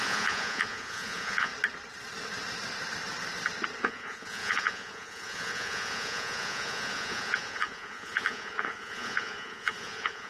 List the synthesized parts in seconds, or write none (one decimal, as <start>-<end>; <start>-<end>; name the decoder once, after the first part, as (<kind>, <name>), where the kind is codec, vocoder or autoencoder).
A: 0.0-1.5 (vocoder, Vocos); 3.8-10.3